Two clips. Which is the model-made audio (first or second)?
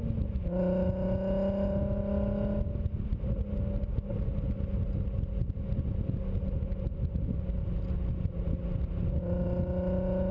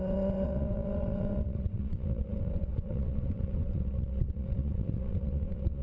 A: second